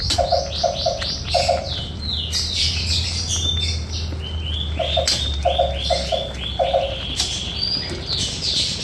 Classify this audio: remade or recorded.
recorded